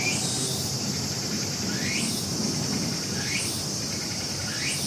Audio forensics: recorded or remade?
recorded